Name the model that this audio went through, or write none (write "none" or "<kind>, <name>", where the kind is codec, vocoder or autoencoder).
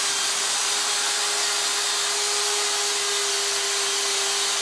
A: none